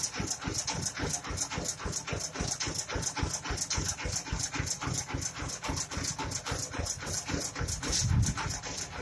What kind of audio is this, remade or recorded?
recorded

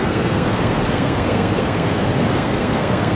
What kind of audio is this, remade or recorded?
remade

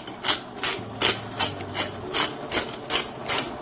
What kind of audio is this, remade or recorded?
recorded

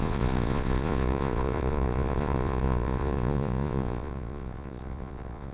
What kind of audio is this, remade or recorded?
remade